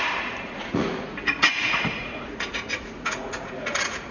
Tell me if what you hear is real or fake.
fake